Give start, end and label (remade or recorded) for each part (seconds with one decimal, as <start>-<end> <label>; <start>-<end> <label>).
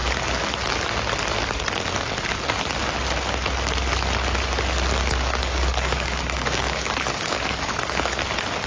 0.0-5.4 recorded; 5.4-8.2 remade; 8.2-8.7 recorded